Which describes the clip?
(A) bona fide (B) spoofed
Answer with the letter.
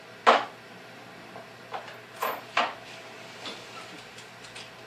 A